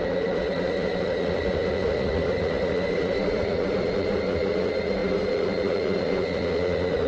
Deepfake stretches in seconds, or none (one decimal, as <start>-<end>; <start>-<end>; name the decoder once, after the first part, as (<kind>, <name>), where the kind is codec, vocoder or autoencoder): 0.0-7.1 (vocoder, Vocos)